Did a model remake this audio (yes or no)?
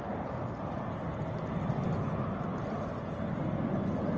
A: no